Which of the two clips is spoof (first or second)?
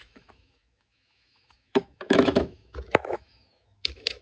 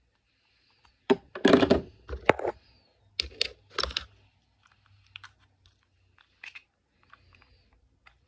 first